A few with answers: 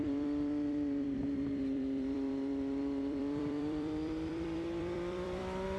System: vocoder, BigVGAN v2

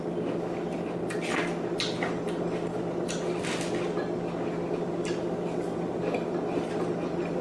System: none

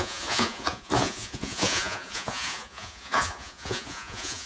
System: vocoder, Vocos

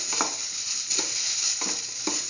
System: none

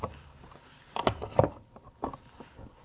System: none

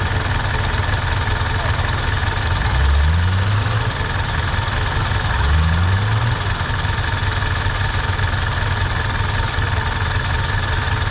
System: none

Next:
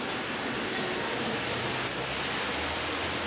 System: none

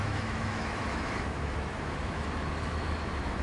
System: autoencoder, DAC-VAE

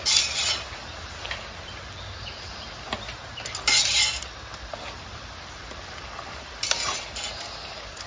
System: none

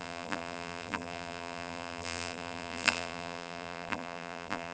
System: vocoder, BigVGAN v2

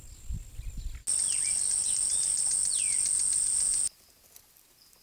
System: none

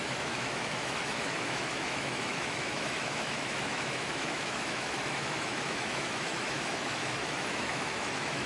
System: autoencoder, DAC-VAE